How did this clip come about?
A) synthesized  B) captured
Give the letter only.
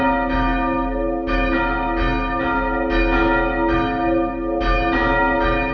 B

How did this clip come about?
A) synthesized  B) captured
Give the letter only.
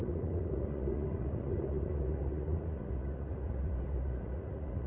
A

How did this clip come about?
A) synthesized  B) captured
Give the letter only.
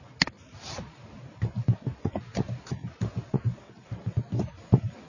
B